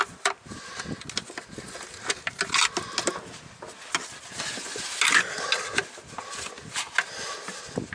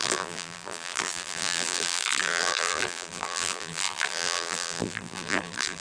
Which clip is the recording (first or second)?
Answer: first